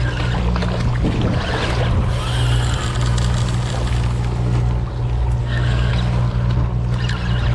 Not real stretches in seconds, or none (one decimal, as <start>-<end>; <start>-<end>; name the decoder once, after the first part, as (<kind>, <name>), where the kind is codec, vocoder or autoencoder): 5.4-5.9 (codec, SNAC)